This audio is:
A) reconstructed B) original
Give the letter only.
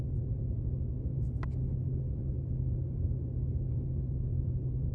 B